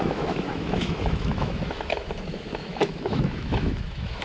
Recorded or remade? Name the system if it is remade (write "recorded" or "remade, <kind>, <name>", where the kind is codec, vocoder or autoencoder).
remade, autoencoder, DAC-VAE